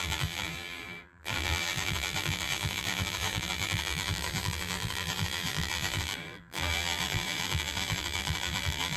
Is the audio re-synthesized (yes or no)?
yes